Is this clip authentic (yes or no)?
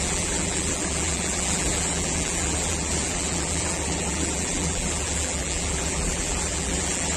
no